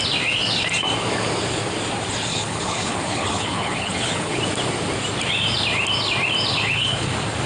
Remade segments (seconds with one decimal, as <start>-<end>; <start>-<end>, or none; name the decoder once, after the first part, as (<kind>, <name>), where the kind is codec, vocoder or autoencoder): 2.3-4.4 (codec, HILCodec); 6.5-7.1